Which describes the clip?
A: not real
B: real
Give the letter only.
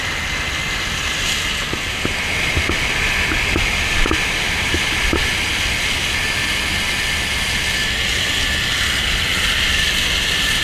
B